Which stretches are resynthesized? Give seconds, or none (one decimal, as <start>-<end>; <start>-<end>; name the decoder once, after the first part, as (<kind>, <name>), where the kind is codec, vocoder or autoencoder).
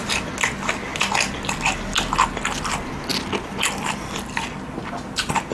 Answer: none